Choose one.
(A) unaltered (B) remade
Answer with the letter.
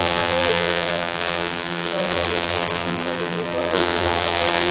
B